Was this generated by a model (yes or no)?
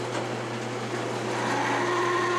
no